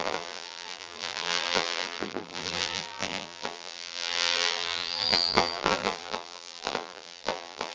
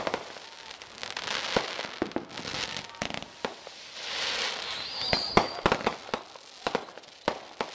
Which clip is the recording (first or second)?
second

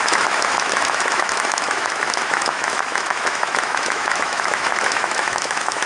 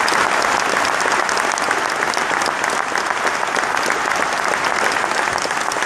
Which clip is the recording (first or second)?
second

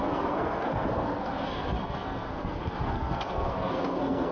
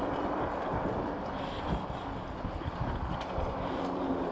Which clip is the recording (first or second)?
second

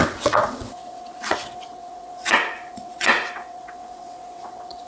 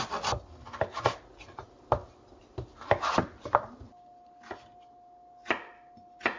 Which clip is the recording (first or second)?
second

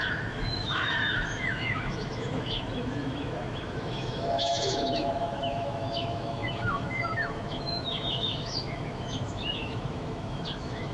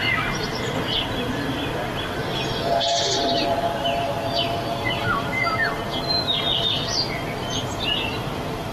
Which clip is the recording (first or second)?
second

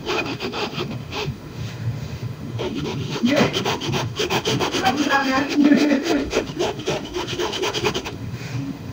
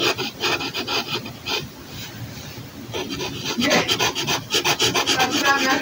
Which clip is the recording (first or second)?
second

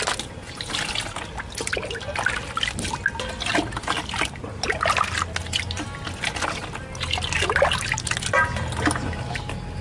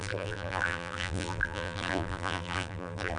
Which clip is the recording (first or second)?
first